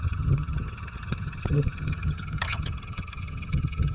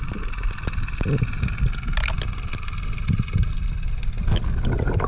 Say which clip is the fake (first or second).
first